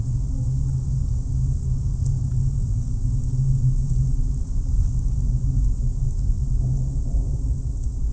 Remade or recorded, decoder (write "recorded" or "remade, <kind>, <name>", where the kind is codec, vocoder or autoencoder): recorded